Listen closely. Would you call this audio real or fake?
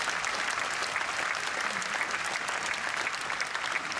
real